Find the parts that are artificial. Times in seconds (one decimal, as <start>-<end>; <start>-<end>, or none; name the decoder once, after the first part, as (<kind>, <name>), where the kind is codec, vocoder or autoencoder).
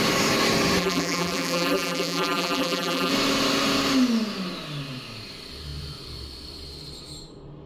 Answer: 0.8-3.1 (vocoder, BigVGAN v2)